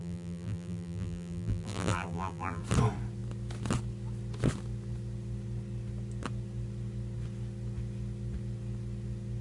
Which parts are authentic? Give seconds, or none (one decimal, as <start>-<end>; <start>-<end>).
2.6-9.4